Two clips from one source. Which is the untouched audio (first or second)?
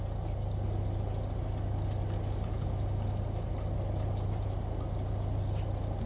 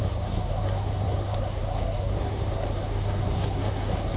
first